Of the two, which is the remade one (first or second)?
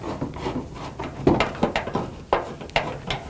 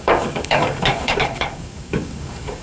second